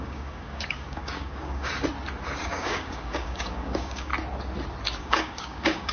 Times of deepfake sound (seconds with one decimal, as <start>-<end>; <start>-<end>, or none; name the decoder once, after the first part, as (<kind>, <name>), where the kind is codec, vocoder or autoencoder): 0.0-1.7 (codec, DAC); 2.4-4.1; 5.0-5.9

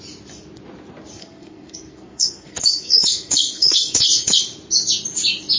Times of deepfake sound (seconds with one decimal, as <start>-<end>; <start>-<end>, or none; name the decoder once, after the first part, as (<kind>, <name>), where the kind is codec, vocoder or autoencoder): 1.2-4.4 (codec, SNAC)

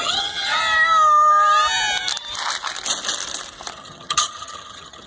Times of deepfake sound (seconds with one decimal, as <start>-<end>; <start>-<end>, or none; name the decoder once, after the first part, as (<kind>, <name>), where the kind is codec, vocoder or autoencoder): 0.0-0.6 (vocoder, HiFi-GAN); 3.7-5.1

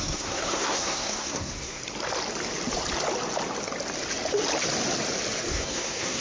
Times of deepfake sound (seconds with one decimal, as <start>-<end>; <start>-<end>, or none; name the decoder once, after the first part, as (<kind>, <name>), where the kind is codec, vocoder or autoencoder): 0.0-1.8 (codec, SNAC); 5.5-6.2